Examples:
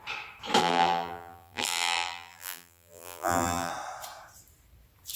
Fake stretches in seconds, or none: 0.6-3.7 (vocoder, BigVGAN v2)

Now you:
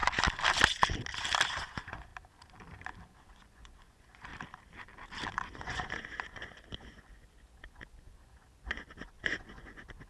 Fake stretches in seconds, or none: 1.5-2.1 (vocoder, Vocos); 3.3-4.3; 5.3-10.1

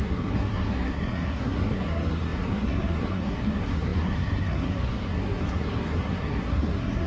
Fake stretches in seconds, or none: 0.0-7.1 (codec, SNAC)

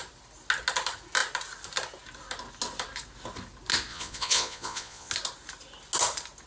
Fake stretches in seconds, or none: 3.9-5.1 (vocoder, Vocos)